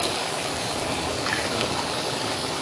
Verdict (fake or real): fake